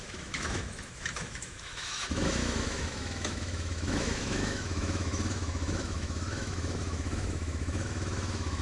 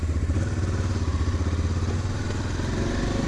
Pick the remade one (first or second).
first